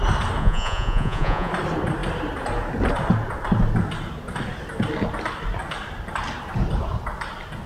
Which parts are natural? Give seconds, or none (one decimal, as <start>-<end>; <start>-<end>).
0.0-0.4; 1.5-7.7